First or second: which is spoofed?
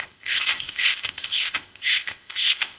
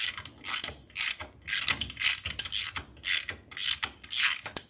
first